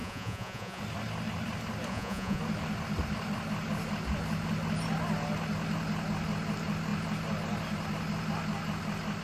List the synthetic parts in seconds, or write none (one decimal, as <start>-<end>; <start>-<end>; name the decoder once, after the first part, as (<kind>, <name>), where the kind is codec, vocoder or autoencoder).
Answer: 0.0-0.8 (vocoder, Vocos); 1.9-2.4